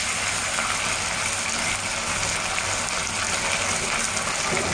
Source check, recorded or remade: recorded